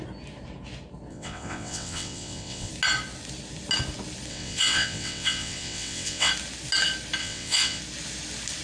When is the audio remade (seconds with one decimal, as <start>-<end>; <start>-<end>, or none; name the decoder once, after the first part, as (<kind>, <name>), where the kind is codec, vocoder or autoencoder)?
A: 1.1-2.7 (vocoder, WaveNeXt); 4.3-6.3; 7.2-7.8